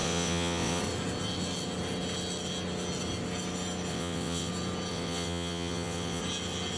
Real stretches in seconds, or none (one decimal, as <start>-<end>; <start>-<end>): 0.8-3.9; 4.5-4.9; 6.2-6.8